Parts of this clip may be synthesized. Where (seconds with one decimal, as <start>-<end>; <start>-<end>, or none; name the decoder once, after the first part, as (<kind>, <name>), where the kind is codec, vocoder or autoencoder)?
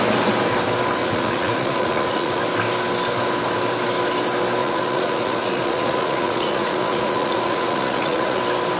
1.0-2.4 (vocoder, Vocos); 4.6-8.4